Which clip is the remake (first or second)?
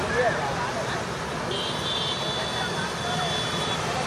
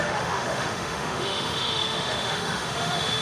second